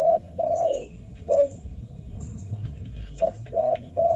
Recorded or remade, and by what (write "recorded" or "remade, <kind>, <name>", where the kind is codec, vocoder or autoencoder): remade, codec, SNAC